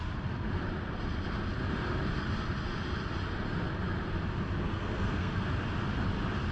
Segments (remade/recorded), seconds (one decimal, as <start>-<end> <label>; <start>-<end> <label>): 0.0-4.6 recorded; 4.6-5.5 remade; 5.5-6.5 recorded